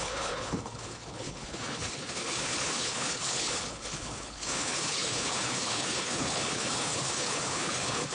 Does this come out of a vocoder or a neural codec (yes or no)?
yes